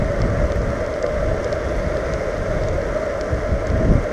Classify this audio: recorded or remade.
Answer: recorded